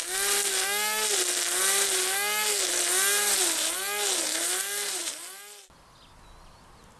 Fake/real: real